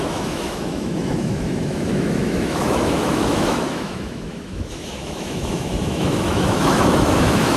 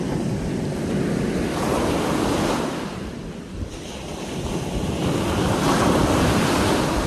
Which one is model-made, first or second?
first